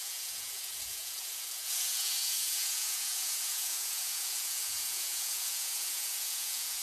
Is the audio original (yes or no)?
no